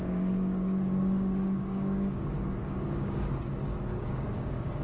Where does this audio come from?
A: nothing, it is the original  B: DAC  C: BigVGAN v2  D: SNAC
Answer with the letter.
B